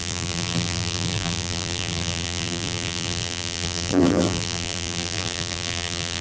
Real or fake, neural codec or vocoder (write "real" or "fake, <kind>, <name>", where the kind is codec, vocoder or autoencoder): fake, vocoder, BigVGAN v2